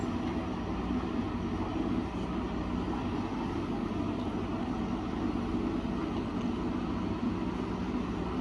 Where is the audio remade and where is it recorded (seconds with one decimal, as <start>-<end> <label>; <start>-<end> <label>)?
0.0-8.4 recorded